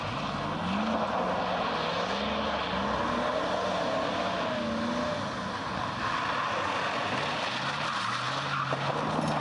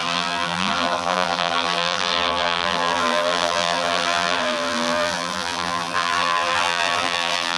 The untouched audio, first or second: first